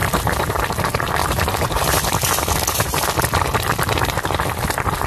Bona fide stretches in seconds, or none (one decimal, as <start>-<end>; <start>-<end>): 0.6-1.2; 1.8-5.1